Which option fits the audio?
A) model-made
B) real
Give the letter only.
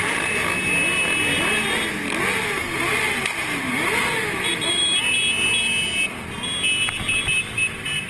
B